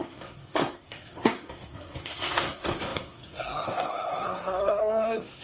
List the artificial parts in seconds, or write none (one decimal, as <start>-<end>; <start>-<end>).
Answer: 0.0-5.4